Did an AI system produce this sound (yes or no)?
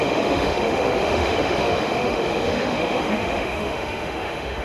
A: yes